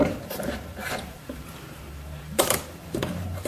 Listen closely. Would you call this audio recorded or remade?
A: remade